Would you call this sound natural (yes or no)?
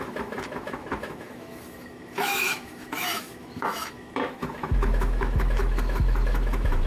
no